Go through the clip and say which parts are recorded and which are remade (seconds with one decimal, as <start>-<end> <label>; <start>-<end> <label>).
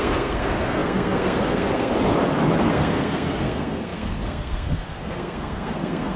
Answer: 0.0-1.9 remade; 1.9-2.7 recorded; 2.7-6.2 remade